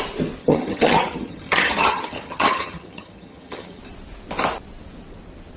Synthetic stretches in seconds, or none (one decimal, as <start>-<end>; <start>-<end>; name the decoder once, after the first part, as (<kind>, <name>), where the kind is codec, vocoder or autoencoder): 0.4-3.8 (vocoder, HiFi-GAN)